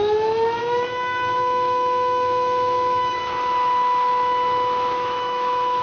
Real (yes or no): no